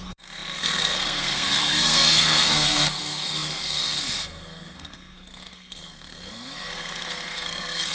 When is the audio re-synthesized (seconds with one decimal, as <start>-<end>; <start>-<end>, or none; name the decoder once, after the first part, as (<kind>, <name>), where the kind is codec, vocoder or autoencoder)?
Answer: 0.0-7.9 (codec, SNAC)